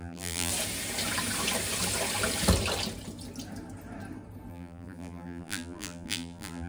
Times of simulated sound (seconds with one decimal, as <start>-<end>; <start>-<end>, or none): 0.0-0.5; 4.5-6.7